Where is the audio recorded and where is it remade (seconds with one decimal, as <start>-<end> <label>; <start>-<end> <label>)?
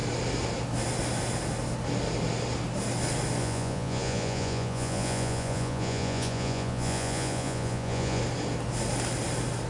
0.0-3.4 recorded; 3.4-8.2 remade; 8.2-9.7 recorded